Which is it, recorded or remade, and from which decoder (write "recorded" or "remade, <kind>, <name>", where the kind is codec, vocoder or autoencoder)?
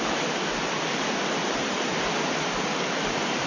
recorded